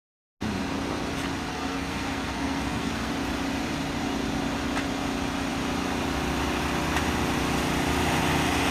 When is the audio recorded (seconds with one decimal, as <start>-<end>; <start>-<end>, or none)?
0.0-1.5; 3.1-8.7